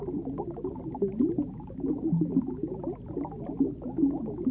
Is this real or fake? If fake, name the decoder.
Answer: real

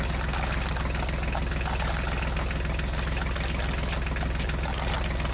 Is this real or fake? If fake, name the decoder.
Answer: real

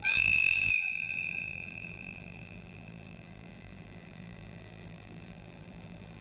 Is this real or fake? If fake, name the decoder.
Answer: fake, vocoder, BigVGAN v2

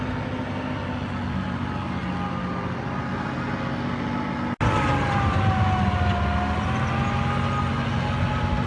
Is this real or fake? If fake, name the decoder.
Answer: real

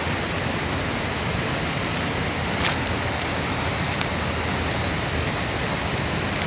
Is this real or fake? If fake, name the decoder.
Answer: real